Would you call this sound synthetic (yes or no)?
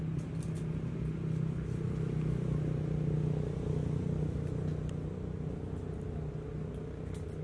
no